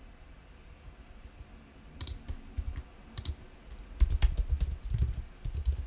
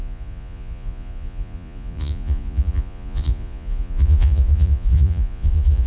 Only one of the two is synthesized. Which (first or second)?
second